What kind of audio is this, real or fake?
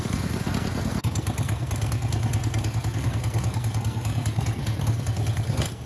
fake